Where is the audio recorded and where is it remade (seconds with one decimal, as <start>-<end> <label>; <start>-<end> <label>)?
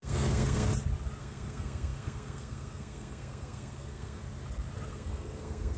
0.0-0.7 remade; 0.7-1.2 recorded; 1.2-4.2 remade; 4.2-4.9 recorded; 4.9-5.8 remade